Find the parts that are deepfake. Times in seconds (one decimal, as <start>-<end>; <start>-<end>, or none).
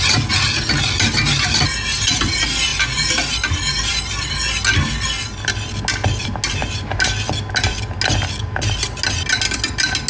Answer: none